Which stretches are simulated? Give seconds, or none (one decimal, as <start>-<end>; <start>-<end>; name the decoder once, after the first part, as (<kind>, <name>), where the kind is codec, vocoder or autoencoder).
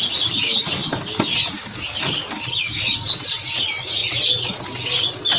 4.0-4.7 (vocoder, BigVGAN v2)